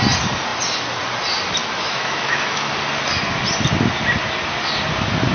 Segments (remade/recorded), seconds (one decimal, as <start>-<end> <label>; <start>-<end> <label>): 0.0-1.6 recorded; 1.6-2.7 remade; 2.7-5.3 recorded